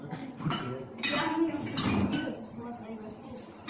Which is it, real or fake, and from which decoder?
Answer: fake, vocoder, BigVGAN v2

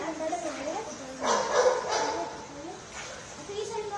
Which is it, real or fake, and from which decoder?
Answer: real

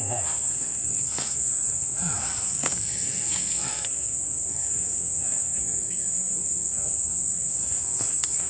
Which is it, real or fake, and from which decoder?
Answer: fake, codec, SNAC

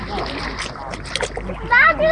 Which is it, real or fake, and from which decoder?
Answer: real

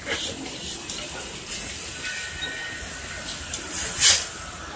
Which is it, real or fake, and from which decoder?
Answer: real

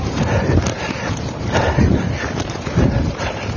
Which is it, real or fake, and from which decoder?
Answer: fake, vocoder, BigVGAN v2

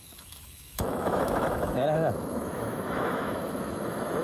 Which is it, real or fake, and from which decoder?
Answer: fake, autoencoder, DAC-VAE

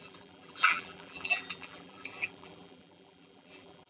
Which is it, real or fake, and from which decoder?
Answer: fake, vocoder, BigVGAN v2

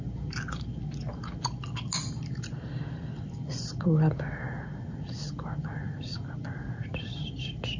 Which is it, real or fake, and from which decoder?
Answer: real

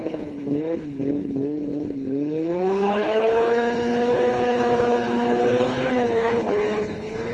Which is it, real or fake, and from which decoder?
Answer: fake, codec, HILCodec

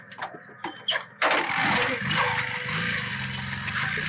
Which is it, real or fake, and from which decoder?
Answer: real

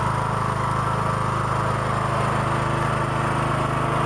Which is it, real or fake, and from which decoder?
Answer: real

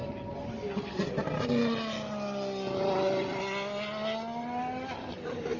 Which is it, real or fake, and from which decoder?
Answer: real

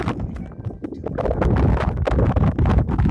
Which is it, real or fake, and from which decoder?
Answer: real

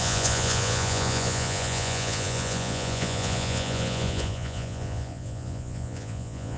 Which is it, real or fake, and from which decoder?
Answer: fake, vocoder, Vocos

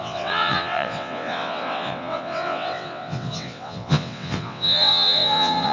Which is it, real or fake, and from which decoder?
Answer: fake, vocoder, WaveNeXt